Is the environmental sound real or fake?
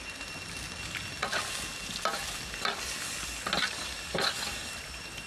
real